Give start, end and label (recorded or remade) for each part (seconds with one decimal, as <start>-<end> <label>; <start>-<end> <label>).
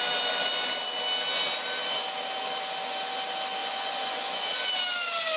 0.0-3.6 recorded; 3.6-4.7 remade; 4.7-5.4 recorded